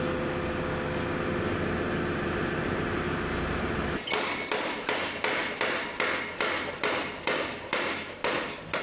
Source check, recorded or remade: recorded